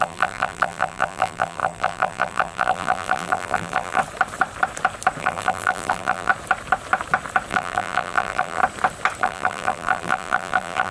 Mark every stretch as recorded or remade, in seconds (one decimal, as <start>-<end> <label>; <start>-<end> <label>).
0.0-4.0 remade; 4.0-5.2 recorded; 5.2-6.3 remade; 6.3-7.5 recorded; 7.5-8.6 remade; 8.6-9.2 recorded; 9.2-10.9 remade